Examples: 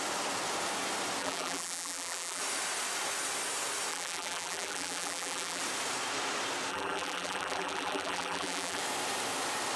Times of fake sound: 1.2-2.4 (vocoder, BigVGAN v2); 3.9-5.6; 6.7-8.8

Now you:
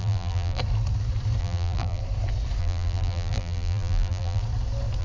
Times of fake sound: 0.0-0.6 (vocoder, BigVGAN v2); 1.4-2.0; 2.6-4.4

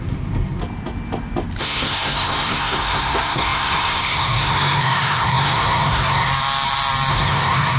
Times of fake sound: 0.0-0.6 (codec, SNAC); 1.6-6.3; 7.1-7.8